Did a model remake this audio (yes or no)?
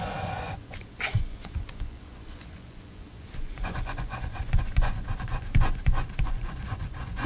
yes